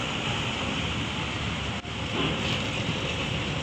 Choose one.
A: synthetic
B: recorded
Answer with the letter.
B